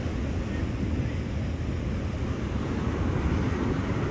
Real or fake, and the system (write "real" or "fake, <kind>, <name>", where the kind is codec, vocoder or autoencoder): real